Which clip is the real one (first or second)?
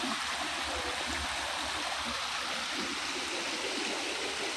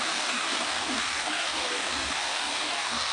first